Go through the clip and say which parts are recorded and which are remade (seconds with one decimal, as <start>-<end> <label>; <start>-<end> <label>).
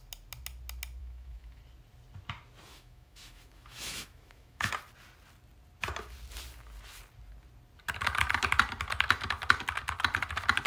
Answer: 0.0-1.0 recorded; 1.0-1.6 remade; 1.6-2.7 recorded; 2.7-4.7 remade; 4.7-10.7 recorded